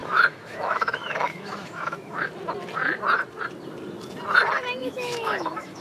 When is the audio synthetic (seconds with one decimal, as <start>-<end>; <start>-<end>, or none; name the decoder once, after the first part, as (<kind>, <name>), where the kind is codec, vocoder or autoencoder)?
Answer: 0.0-2.3 (autoencoder, DAC-VAE); 4.8-5.8